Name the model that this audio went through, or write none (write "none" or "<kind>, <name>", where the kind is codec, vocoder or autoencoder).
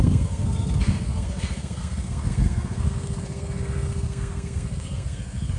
codec, SNAC